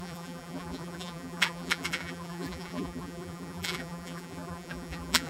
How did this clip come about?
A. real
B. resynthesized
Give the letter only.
B